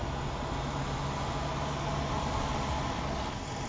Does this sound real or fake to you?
real